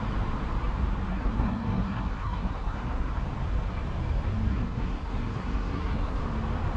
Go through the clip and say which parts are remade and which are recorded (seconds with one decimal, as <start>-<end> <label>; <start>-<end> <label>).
0.0-1.1 recorded; 1.1-3.1 remade; 3.1-4.5 recorded; 4.5-6.2 remade; 6.2-6.8 recorded